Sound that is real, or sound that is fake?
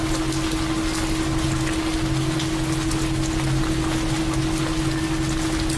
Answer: real